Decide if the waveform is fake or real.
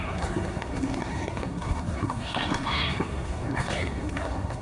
fake